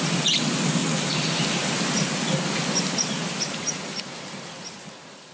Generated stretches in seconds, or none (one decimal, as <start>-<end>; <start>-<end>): none